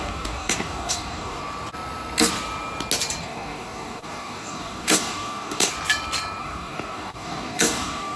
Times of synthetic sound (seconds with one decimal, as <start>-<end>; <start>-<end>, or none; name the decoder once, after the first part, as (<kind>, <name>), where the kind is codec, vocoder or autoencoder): 0.0-1.4 (codec, DAC); 3.2-5.7; 6.4-8.2